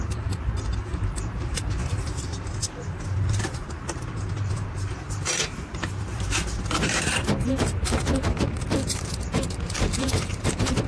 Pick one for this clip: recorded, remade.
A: remade